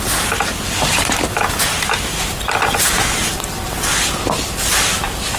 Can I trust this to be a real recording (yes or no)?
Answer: no